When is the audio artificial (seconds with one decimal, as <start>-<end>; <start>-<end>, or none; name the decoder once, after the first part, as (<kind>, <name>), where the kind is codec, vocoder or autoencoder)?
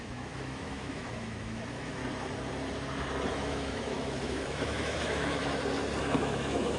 0.0-2.0 (autoencoder, DAC-VAE); 3.3-5.4; 6.0-6.8